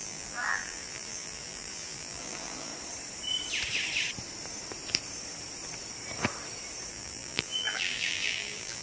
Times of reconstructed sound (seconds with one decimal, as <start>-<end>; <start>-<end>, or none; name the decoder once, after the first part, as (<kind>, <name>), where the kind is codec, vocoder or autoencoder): 0.0-2.7 (vocoder, BigVGAN v2); 6.9-8.8